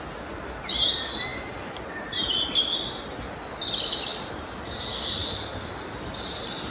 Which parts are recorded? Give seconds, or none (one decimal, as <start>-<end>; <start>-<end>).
0.0-6.7